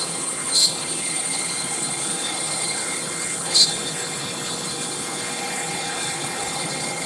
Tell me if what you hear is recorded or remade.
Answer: remade